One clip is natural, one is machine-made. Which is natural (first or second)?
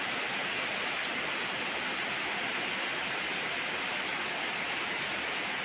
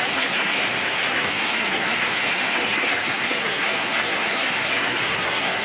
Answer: first